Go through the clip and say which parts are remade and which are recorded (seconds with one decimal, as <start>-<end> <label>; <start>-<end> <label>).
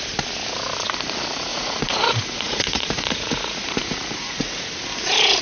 0.0-1.5 recorded; 1.5-4.7 remade; 4.7-5.4 recorded